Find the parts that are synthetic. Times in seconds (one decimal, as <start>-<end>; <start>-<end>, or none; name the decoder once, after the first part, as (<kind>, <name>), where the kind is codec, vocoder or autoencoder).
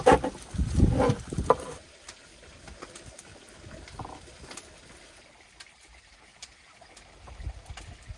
none